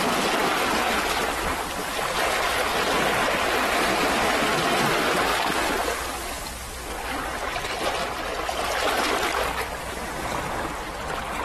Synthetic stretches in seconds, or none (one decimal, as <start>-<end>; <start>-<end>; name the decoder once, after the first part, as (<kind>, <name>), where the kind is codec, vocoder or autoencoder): none